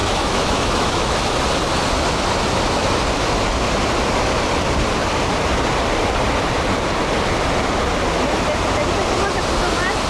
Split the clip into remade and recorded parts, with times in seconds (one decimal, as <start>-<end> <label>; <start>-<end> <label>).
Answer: 0.0-1.4 remade; 1.4-10.1 recorded